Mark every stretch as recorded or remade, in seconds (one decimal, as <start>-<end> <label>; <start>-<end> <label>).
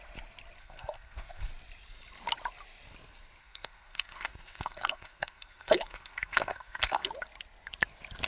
0.0-0.6 recorded; 0.6-1.5 remade; 1.5-3.4 recorded; 3.4-7.1 remade; 7.1-8.3 recorded